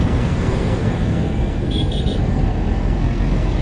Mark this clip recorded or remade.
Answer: remade